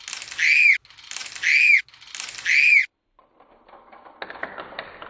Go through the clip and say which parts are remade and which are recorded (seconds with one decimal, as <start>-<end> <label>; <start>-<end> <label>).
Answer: 0.0-2.8 recorded; 2.8-3.5 remade; 3.5-5.1 recorded